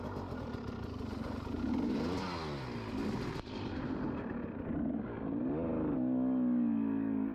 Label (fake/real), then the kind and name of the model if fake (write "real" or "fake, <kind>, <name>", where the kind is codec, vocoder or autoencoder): real